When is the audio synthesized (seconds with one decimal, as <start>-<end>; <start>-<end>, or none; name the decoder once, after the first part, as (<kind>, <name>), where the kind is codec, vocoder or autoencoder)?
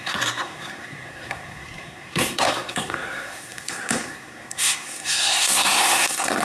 0.0-6.4 (codec, SNAC)